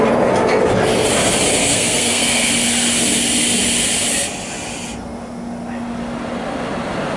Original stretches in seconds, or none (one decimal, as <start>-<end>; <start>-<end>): 0.0-1.6; 2.5-7.2